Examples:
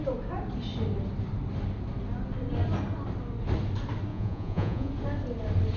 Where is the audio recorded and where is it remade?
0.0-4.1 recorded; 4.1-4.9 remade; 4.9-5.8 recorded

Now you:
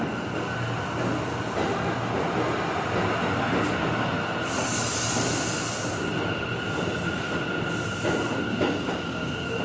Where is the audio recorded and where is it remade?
0.0-8.5 recorded; 8.5-9.6 remade

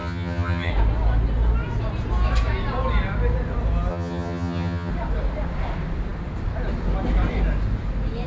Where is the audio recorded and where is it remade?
0.0-0.7 remade; 0.7-3.9 recorded; 3.9-4.9 remade; 4.9-8.3 recorded

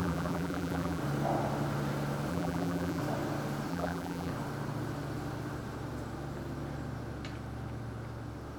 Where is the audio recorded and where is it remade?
0.0-1.0 remade; 1.0-2.3 recorded; 2.3-3.0 remade; 3.0-3.7 recorded; 3.7-4.3 remade; 4.3-8.6 recorded

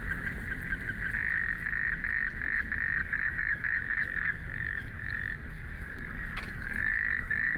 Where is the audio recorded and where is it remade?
0.0-3.0 recorded; 3.0-7.6 remade

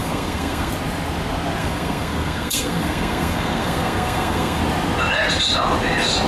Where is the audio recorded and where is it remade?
0.0-0.7 remade; 0.7-1.6 recorded; 1.6-4.6 remade; 4.6-6.3 recorded

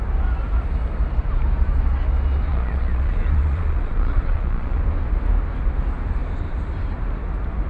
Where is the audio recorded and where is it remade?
0.0-2.5 recorded; 2.5-4.8 remade; 4.8-7.7 recorded